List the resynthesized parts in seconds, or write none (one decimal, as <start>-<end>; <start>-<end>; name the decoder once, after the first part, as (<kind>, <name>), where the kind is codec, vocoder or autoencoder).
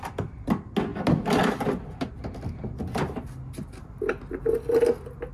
none